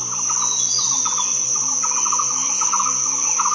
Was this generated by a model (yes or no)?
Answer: no